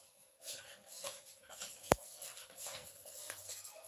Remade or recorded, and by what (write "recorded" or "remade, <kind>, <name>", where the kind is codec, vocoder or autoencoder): remade, codec, SNAC